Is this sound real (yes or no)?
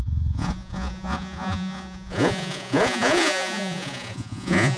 no